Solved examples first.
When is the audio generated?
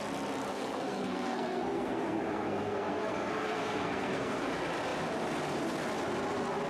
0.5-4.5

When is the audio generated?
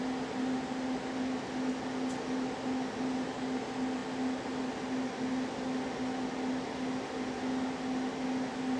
none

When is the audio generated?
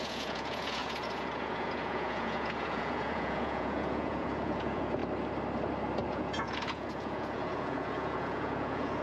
0.0-5.0; 6.1-9.0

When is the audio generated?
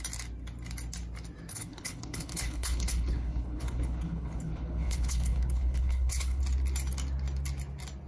1.5-6.4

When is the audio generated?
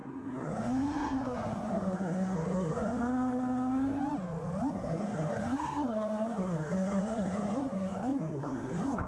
0.0-4.0; 4.7-9.1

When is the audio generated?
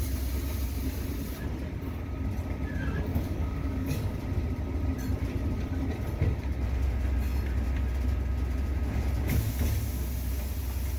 3.1-4.2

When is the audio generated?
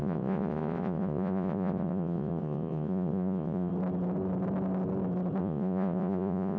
0.0-3.7; 5.4-6.6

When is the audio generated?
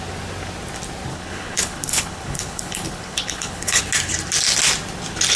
1.1-3.8